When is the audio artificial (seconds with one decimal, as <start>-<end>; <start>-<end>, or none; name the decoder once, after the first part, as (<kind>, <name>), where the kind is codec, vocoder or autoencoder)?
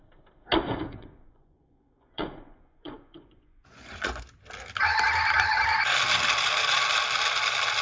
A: 0.6-4.2 (vocoder, Vocos)